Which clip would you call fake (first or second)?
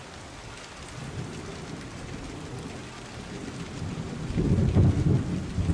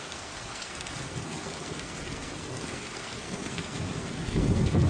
second